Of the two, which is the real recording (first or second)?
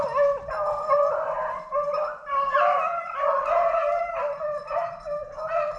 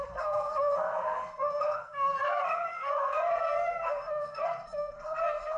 first